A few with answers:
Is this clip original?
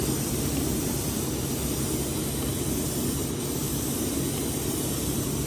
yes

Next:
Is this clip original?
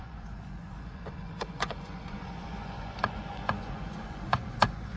no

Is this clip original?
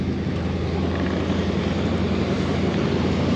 yes